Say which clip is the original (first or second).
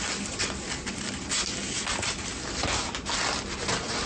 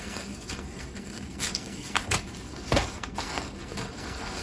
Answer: first